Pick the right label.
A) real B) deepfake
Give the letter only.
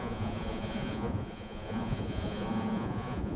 B